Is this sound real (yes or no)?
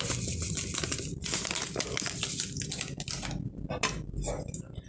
yes